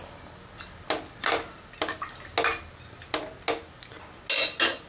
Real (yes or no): yes